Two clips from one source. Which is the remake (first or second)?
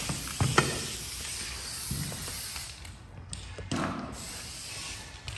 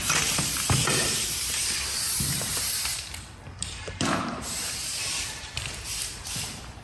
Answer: second